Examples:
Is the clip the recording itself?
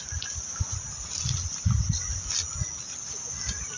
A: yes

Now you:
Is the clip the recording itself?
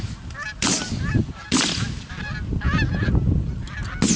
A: yes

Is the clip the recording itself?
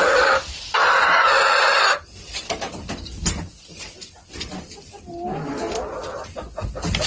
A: yes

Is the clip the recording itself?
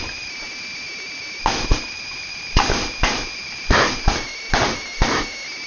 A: yes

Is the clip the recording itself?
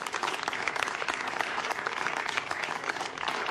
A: no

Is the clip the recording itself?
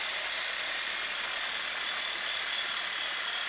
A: yes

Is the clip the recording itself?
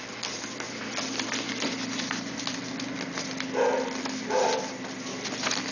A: yes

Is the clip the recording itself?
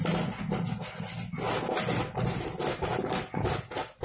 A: yes